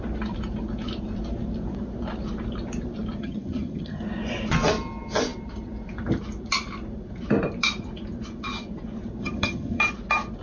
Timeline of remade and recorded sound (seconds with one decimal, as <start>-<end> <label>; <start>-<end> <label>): 0.0-3.2 recorded; 3.2-4.0 remade; 4.0-9.2 recorded; 9.2-9.8 remade; 9.8-10.4 recorded